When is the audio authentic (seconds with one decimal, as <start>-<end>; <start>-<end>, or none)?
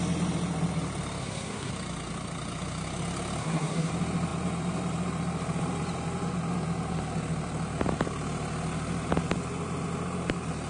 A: 0.0-1.2; 1.7-3.4; 3.9-10.7